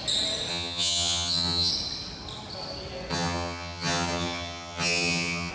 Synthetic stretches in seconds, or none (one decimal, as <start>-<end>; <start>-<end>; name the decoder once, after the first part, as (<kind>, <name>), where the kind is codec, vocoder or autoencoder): 0.5-1.7 (vocoder, HiFi-GAN); 3.1-5.5